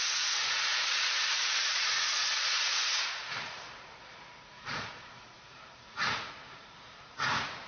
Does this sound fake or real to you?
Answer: fake